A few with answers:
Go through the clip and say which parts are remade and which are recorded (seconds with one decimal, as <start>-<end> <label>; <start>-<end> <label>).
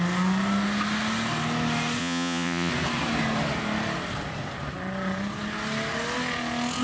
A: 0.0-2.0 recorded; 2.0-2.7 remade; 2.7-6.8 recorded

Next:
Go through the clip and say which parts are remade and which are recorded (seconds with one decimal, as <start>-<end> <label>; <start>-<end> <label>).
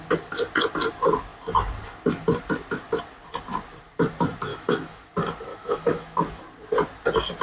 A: 0.0-4.5 recorded; 4.5-5.1 remade; 5.1-5.5 recorded; 5.5-6.4 remade; 6.4-7.4 recorded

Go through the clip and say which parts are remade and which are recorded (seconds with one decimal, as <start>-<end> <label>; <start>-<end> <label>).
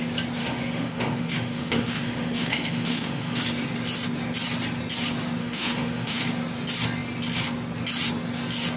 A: 0.0-0.4 recorded; 0.4-3.4 remade; 3.4-5.4 recorded; 5.4-6.2 remade; 6.2-8.8 recorded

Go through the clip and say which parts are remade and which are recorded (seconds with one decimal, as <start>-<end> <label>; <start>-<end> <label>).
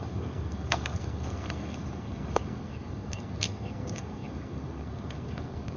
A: 0.0-5.8 remade